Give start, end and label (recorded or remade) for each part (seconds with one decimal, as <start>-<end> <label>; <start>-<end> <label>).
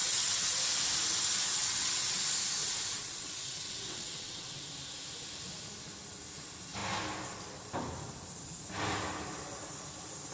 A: 0.0-0.6 remade; 0.6-1.5 recorded; 1.5-2.2 remade; 2.2-2.6 recorded; 2.6-4.6 remade; 4.6-10.3 recorded